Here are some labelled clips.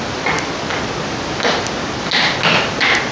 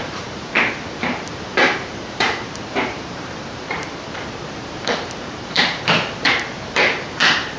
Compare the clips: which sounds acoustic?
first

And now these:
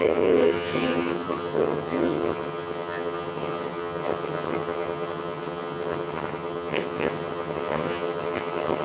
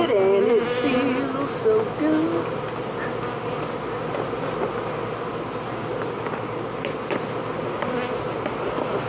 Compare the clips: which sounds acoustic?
second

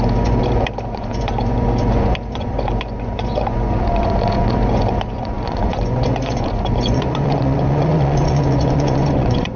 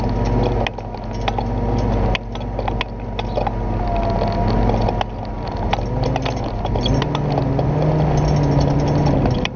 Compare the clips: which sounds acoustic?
second